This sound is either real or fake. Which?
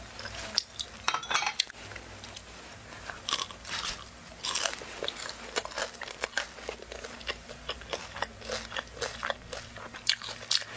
real